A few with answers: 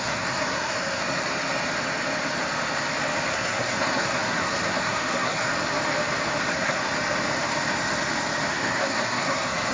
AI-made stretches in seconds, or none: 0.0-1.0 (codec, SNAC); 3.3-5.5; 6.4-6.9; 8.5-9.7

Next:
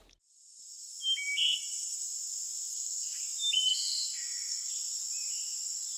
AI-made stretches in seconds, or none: 2.7-3.2 (codec, SNAC); 3.7-4.7

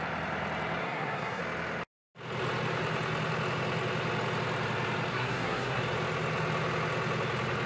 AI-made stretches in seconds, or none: 0.8-1.4 (codec, SNAC); 5.1-5.8

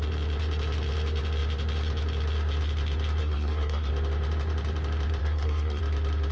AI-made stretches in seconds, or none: 3.2-3.9 (codec, SNAC); 5.2-5.8